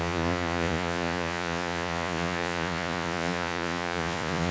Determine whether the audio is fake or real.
fake